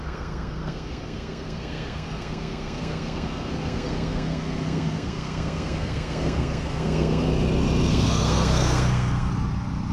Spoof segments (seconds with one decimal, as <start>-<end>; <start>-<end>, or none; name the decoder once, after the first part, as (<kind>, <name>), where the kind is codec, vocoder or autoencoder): 0.0-7.3 (codec, SNAC); 7.9-9.3